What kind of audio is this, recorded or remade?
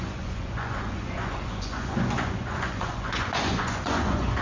remade